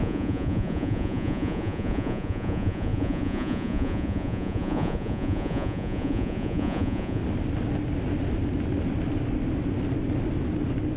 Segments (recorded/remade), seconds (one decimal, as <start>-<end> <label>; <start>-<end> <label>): 0.0-7.2 remade; 7.2-11.0 recorded